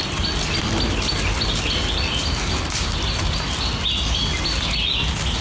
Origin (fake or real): real